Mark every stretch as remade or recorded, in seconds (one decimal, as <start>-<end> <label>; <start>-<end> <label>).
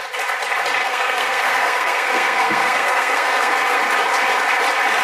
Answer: 0.0-0.8 recorded; 0.8-3.8 remade; 3.8-5.0 recorded